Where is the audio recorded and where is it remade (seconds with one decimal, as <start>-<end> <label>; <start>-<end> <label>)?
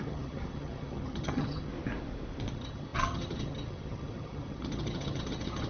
0.0-1.7 remade; 1.7-2.5 recorded; 2.5-5.7 remade